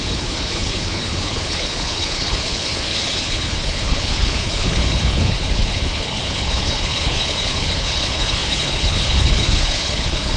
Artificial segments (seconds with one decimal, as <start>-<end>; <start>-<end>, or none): 0.0-10.4